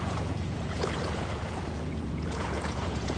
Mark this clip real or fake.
fake